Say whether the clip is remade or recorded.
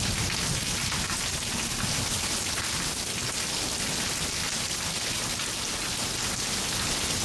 recorded